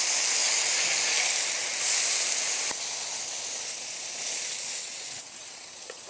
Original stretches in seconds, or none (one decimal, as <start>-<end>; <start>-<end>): 0.0-4.8

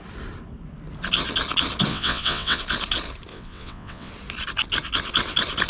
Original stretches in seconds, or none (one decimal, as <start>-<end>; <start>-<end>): 0.0-1.9; 2.6-3.3; 4.1-5.7

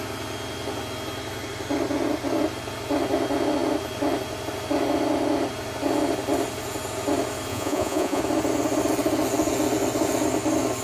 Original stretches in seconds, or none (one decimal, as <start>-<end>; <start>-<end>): 0.0-7.5; 8.2-10.8

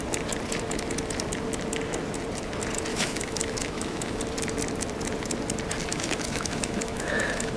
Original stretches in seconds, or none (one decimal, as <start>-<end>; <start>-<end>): 0.0-2.9; 4.2-5.9

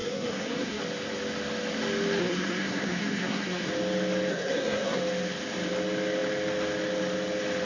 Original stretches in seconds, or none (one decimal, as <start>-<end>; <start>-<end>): 0.8-2.2; 3.7-4.3; 5.0-7.7

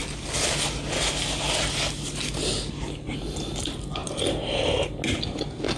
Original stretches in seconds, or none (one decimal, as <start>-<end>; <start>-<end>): 0.0-4.0; 4.5-5.8